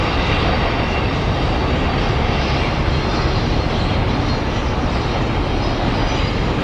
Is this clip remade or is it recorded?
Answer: recorded